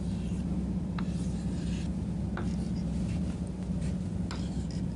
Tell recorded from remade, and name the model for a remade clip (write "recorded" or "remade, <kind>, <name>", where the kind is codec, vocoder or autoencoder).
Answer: recorded